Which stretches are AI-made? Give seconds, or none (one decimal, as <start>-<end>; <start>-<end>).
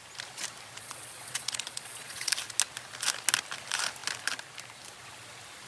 0.8-2.3